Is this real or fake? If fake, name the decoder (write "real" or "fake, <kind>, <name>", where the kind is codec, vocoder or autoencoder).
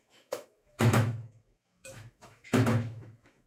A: fake, autoencoder, DAC-VAE